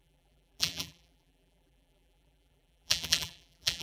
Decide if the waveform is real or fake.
fake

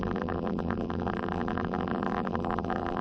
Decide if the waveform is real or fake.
fake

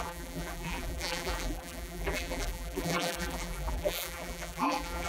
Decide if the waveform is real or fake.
fake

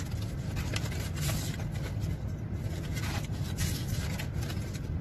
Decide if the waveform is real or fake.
real